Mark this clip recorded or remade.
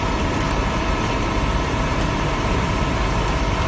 recorded